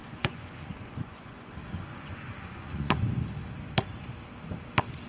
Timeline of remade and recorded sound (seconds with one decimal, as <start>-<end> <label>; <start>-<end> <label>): 0.0-3.1 remade; 3.1-5.1 recorded